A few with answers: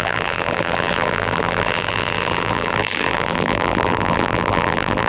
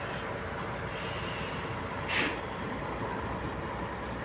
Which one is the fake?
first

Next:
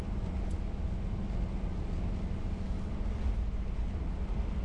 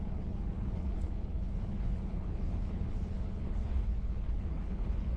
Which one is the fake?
second